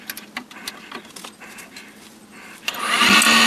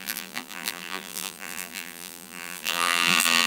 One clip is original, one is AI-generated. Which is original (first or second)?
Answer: first